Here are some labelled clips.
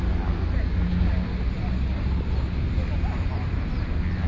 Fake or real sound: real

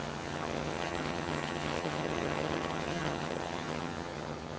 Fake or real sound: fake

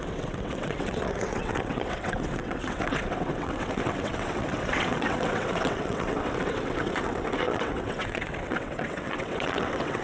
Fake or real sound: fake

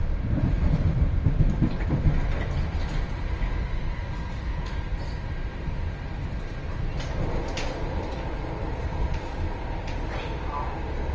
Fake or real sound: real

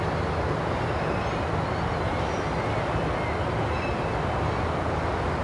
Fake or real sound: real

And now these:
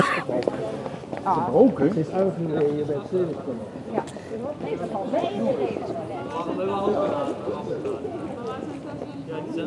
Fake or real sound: real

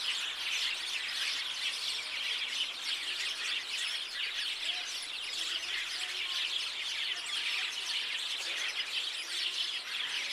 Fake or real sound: real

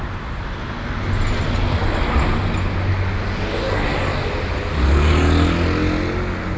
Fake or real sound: real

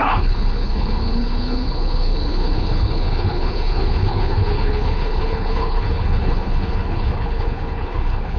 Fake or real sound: fake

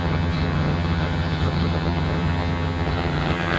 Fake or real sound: fake